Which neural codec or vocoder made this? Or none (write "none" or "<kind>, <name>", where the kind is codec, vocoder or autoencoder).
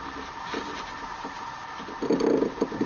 none